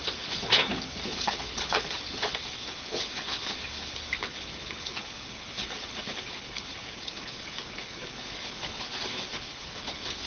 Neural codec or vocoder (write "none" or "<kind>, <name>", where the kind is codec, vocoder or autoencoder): codec, HILCodec